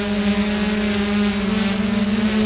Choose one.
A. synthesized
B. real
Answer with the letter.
B